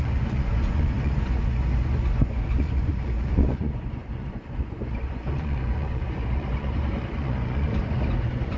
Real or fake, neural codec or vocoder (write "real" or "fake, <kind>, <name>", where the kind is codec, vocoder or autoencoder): fake, vocoder, Vocos